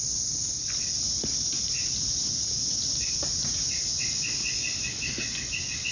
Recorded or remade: recorded